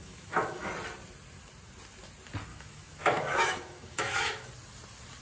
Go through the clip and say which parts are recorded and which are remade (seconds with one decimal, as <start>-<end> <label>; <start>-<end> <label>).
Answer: 0.0-0.7 remade; 0.7-2.5 recorded; 2.5-4.5 remade; 4.5-5.2 recorded